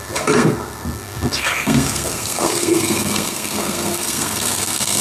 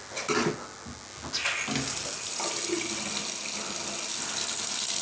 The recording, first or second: second